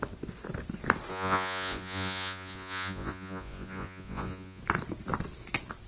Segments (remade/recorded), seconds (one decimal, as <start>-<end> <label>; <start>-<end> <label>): 0.0-1.1 recorded; 1.1-4.6 remade; 4.6-5.9 recorded